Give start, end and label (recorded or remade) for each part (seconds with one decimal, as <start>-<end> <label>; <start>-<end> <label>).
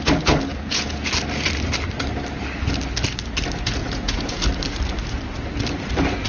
0.0-0.5 recorded; 0.5-1.1 remade; 1.1-3.8 recorded; 3.8-4.4 remade; 4.4-6.3 recorded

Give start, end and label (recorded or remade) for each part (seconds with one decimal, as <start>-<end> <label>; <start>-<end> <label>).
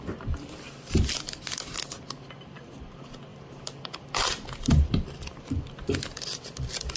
0.0-7.0 recorded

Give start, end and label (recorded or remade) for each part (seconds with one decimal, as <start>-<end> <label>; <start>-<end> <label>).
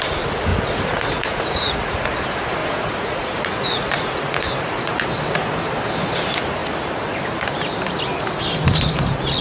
0.0-0.5 recorded; 0.5-2.0 remade; 2.0-2.6 recorded; 2.6-5.1 remade; 5.1-9.4 recorded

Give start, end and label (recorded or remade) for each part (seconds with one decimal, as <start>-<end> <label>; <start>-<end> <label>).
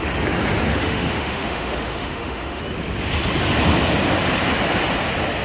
0.0-0.7 recorded; 0.7-2.6 remade; 2.6-5.4 recorded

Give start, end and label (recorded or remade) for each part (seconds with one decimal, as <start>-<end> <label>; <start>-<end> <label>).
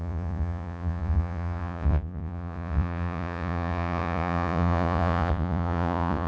0.0-6.3 remade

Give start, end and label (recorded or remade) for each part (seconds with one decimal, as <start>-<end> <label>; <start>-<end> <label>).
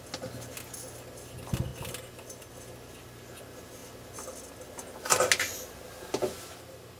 0.0-7.0 recorded